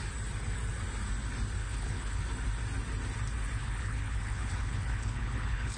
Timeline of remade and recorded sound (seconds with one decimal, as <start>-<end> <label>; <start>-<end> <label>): 0.0-1.6 recorded; 1.6-2.2 remade; 2.2-3.6 recorded; 3.6-5.8 remade